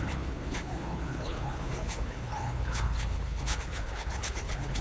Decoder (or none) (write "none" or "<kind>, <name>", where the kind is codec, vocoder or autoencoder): codec, HILCodec